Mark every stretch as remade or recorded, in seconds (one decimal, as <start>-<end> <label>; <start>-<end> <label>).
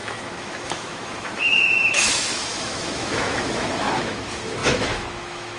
0.0-5.6 remade